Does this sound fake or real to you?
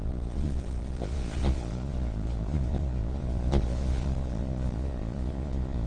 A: fake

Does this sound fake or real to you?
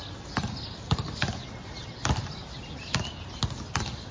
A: real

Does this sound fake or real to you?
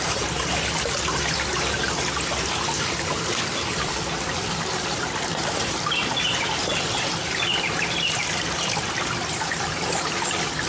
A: real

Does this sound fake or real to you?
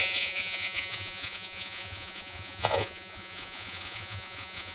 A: fake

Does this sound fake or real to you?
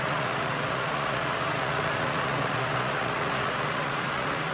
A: fake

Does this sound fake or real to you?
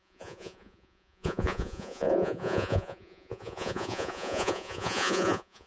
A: fake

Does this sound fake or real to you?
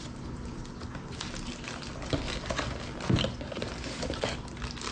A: real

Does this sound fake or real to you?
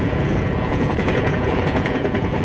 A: fake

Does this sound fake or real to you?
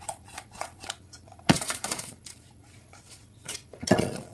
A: fake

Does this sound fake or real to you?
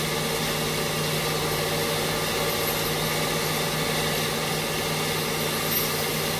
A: real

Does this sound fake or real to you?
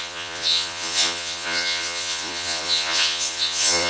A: fake